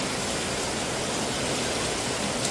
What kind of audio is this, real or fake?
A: real